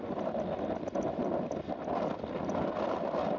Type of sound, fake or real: real